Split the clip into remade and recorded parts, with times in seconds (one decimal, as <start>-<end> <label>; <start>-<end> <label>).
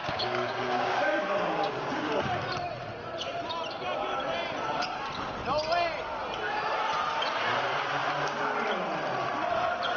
0.0-2.1 remade; 2.1-10.0 recorded